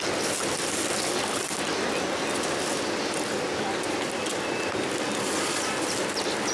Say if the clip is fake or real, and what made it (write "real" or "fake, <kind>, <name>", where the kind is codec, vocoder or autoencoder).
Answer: real